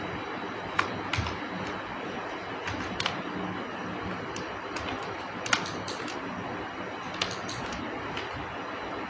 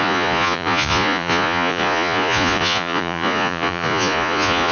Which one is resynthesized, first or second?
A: second